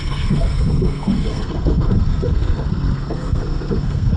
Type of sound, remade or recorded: remade